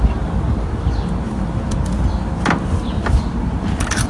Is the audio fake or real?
real